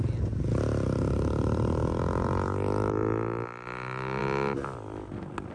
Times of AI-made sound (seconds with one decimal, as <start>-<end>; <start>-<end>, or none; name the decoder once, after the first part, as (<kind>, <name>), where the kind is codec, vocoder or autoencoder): none